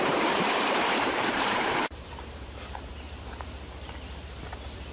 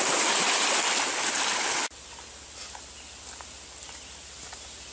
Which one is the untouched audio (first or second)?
second